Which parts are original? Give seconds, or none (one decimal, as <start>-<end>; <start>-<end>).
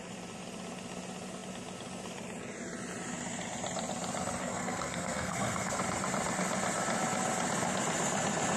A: 0.0-4.4; 5.8-8.6